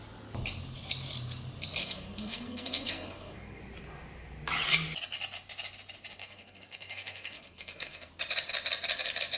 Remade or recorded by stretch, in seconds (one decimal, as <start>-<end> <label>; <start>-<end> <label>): 0.0-1.8 recorded; 1.8-3.6 remade; 3.6-6.2 recorded; 6.2-8.1 remade; 8.1-9.4 recorded